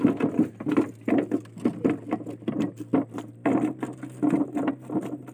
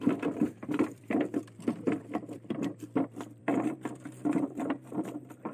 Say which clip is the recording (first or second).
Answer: first